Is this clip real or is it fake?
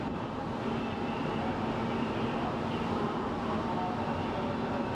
real